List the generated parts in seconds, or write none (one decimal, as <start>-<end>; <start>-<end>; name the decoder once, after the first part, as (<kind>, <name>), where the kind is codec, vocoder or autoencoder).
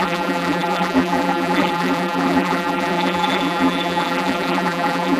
0.0-5.2 (vocoder, BigVGAN v2)